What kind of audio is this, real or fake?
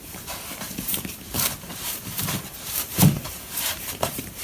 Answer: fake